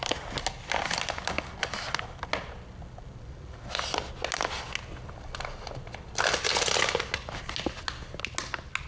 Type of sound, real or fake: real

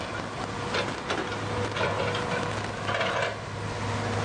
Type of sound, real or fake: real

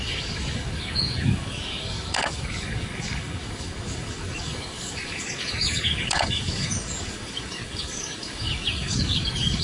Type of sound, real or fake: fake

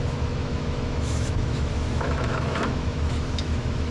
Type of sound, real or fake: fake